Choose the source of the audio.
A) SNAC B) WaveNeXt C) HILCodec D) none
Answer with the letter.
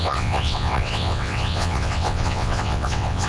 B